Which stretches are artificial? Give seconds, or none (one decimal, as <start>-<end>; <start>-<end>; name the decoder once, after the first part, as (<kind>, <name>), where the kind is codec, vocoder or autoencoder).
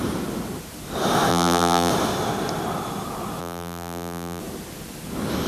1.3-1.9 (vocoder, BigVGAN v2); 3.4-4.4